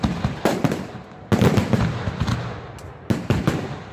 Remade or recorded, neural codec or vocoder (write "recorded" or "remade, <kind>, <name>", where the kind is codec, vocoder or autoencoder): recorded